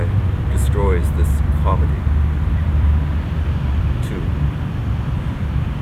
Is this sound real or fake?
fake